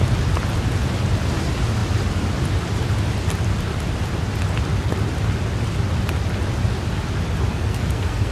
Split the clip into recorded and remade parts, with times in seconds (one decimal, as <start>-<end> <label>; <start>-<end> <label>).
0.0-7.5 recorded; 7.5-8.3 remade